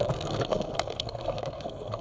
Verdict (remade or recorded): remade